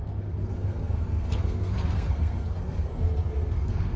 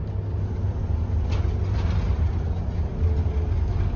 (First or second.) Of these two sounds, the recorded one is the second